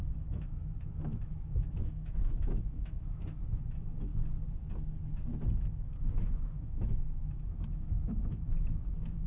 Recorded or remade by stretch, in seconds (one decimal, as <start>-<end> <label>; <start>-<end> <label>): 0.0-4.1 remade; 4.1-5.6 recorded; 5.6-9.3 remade